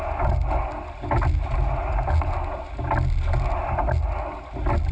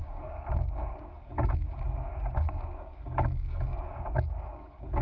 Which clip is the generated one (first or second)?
second